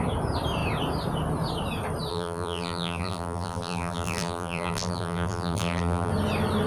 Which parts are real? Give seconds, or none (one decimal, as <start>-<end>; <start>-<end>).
0.0-2.1; 6.1-6.7